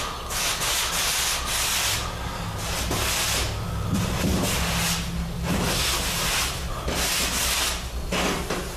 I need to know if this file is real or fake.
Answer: real